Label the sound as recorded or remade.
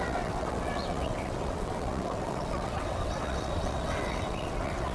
remade